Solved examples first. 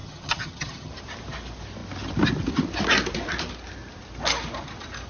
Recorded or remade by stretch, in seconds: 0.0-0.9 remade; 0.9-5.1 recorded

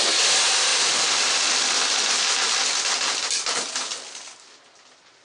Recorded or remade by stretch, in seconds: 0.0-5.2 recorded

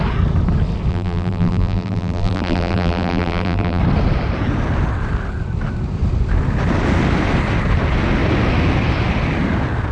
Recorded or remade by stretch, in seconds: 0.0-0.9 recorded; 0.9-3.8 remade; 3.8-9.9 recorded

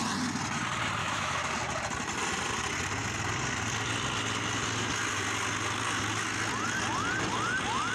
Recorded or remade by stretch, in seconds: 0.0-1.0 recorded; 1.0-1.5 remade; 1.5-7.9 recorded

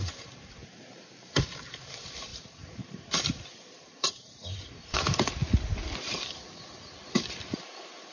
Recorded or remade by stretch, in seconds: 0.0-5.4 remade; 5.4-6.0 recorded; 6.0-8.1 remade

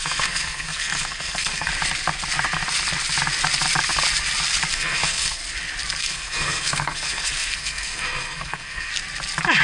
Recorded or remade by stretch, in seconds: 0.0-1.7 remade; 1.7-4.7 recorded; 4.7-5.4 remade; 5.4-6.0 recorded; 6.0-8.9 remade; 8.9-9.6 recorded

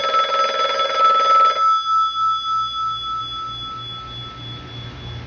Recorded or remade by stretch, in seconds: 0.0-5.3 recorded

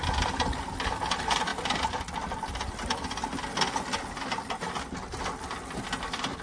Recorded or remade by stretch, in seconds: 0.0-6.4 recorded